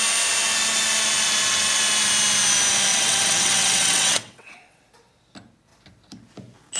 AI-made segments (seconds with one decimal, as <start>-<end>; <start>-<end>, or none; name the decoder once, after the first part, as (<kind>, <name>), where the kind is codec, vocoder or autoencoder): 2.9-4.8 (vocoder, WaveNeXt)